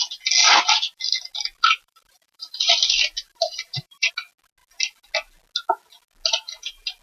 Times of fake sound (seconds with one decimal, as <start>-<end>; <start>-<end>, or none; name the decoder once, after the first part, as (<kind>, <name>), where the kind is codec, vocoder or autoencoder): 0.4-4.1 (vocoder, BigVGAN v2)